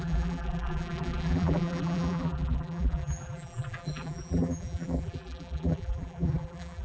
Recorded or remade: remade